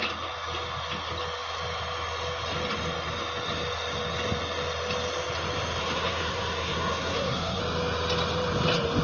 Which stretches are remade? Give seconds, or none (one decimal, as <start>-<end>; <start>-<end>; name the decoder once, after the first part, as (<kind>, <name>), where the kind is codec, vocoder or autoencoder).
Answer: 5.8-7.6 (codec, SNAC)